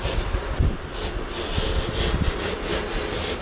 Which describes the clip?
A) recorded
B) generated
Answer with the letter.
A